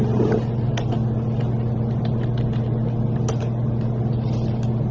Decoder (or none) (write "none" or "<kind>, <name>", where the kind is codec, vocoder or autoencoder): none